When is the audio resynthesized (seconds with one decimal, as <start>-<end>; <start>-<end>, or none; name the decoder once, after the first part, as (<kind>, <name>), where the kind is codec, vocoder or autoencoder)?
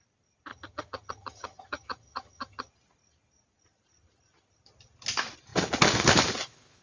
0.5-2.7 (vocoder, HiFi-GAN)